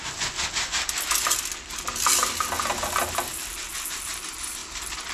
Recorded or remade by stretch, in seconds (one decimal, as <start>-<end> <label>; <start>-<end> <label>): 0.0-5.1 recorded